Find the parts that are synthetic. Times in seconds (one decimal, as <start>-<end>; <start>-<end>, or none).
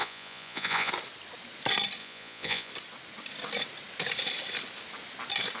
0.0-0.9; 2.0-2.7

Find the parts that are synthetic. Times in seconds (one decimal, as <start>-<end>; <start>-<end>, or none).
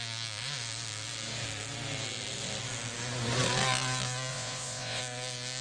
4.3-5.0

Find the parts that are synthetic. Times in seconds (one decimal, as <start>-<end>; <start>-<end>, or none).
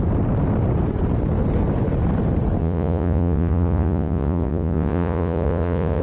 2.6-6.0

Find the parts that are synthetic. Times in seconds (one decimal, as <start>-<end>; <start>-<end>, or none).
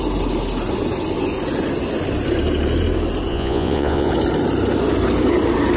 3.3-4.1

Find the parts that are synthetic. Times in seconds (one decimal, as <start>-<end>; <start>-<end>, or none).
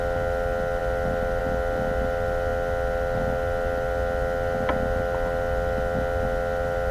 none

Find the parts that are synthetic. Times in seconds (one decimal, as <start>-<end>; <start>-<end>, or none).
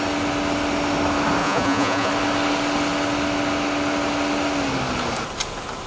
1.4-2.1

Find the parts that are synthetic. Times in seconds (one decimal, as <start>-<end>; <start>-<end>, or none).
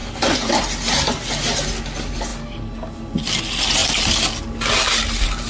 none